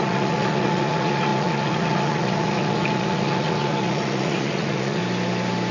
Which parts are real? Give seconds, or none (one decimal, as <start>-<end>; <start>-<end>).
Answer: 5.0-5.7